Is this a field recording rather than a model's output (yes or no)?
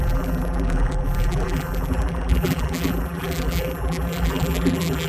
no